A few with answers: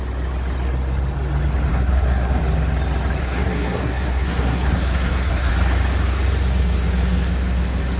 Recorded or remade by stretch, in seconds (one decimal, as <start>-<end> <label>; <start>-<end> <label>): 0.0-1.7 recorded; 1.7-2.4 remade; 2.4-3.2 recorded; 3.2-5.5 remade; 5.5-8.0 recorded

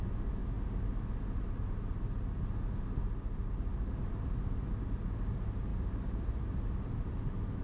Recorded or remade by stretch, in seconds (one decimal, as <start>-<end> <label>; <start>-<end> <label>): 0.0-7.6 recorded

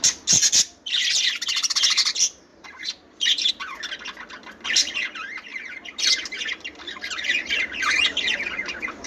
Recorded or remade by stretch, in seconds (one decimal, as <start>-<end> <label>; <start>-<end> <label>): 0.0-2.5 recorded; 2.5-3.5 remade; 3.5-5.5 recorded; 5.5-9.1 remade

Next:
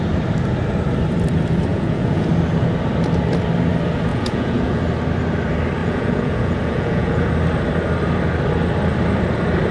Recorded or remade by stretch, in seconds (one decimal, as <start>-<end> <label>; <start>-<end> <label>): 0.0-1.7 recorded; 1.7-2.3 remade; 2.3-4.1 recorded; 4.1-4.8 remade; 4.8-5.8 recorded; 5.8-7.3 remade; 7.3-9.7 recorded

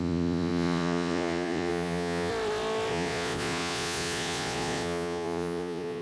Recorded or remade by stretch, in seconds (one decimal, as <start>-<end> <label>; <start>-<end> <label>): 0.0-2.3 remade; 2.3-2.9 recorded; 2.9-6.0 remade